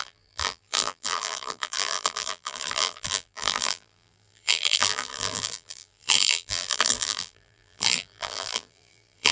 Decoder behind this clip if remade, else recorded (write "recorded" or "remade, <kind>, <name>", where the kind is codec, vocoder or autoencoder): remade, vocoder, BigVGAN v2